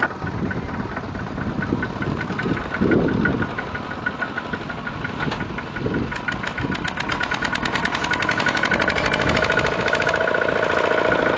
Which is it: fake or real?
real